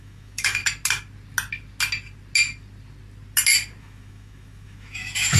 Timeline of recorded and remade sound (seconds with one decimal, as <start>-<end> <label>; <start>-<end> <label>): 0.0-0.6 remade; 0.6-3.8 recorded; 3.8-5.4 remade